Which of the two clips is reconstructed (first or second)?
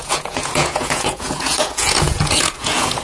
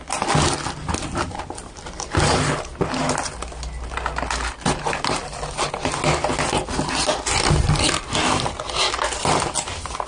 first